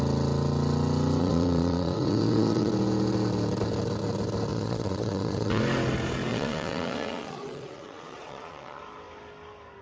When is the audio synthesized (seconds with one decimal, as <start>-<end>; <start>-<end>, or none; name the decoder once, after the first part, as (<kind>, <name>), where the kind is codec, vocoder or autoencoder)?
1.2-2.7 (vocoder, Vocos); 4.5-5.6; 6.3-8.8